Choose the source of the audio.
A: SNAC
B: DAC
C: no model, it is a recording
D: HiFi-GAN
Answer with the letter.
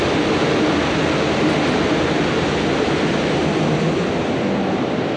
C